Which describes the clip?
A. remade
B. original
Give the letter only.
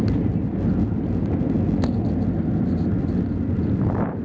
B